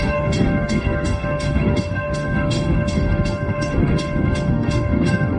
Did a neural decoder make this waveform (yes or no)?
yes